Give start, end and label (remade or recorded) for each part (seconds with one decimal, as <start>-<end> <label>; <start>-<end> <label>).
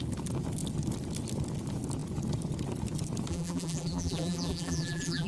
0.0-3.3 recorded; 3.3-5.3 remade